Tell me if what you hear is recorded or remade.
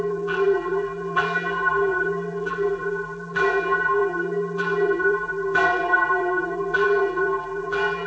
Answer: remade